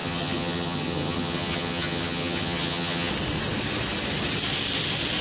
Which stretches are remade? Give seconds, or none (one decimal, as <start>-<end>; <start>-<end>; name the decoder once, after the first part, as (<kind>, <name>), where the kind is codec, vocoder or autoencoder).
0.0-3.1 (vocoder, HiFi-GAN)